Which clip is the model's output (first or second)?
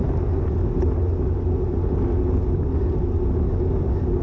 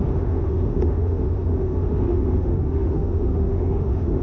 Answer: second